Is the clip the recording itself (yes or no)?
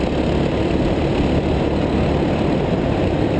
yes